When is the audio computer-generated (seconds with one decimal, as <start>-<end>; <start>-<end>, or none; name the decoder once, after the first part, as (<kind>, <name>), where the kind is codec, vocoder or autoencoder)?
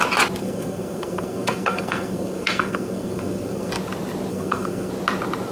0.4-3.7 (codec, SNAC); 4.3-4.9